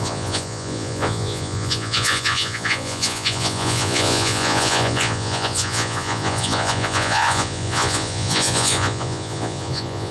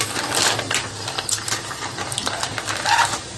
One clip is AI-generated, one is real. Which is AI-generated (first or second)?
first